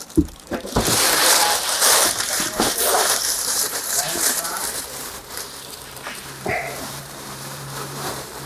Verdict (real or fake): fake